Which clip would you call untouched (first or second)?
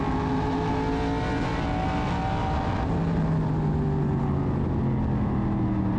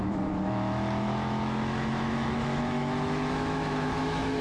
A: first